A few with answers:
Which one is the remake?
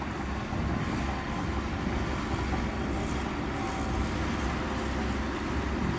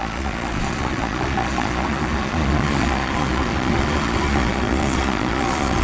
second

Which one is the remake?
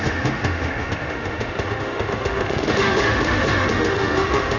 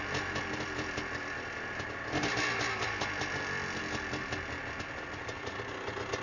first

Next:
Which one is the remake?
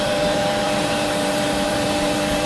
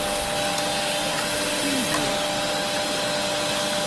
first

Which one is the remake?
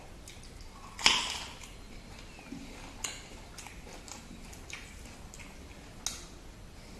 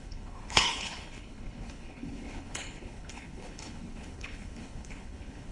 second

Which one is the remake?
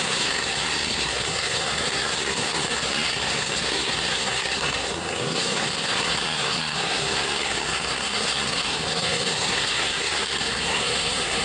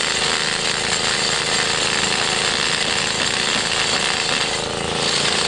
first